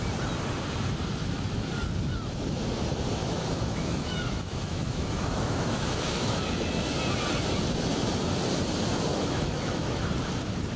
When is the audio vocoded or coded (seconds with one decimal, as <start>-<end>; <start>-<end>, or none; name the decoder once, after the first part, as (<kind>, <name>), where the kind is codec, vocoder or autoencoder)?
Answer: 3.2-6.4 (autoencoder, DAC-VAE); 9.1-10.1